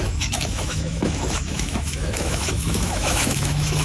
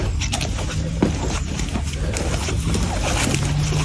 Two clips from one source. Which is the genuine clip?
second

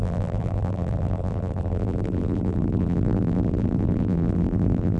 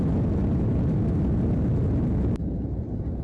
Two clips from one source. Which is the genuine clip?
second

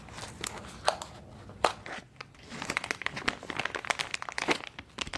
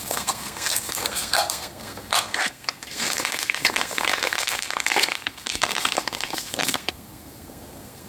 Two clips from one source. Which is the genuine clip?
first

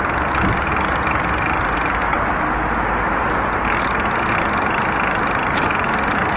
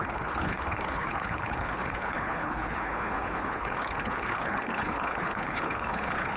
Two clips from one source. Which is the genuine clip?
first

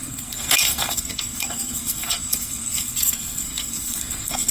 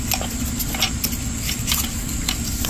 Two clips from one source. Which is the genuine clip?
second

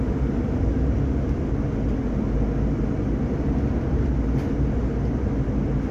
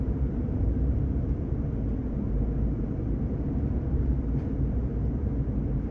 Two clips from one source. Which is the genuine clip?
first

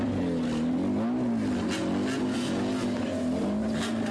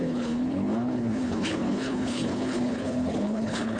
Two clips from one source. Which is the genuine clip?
first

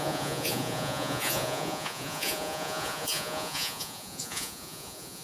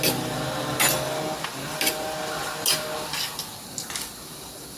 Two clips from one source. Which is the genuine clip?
second